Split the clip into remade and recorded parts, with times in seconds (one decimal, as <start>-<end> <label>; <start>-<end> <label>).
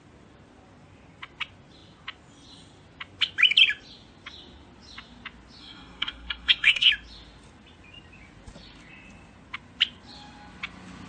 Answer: 0.0-5.6 recorded; 5.6-6.9 remade; 6.9-11.1 recorded